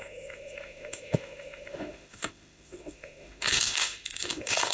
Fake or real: fake